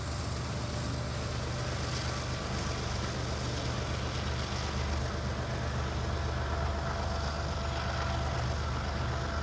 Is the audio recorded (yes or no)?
yes